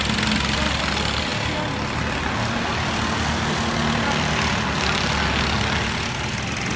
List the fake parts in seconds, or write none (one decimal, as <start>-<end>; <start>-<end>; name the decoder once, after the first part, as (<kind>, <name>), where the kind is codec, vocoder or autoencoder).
none